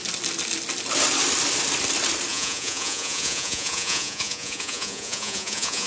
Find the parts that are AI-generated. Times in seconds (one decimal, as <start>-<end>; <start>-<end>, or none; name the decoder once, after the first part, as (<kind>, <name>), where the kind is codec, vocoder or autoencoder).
2.3-5.9 (vocoder, Vocos)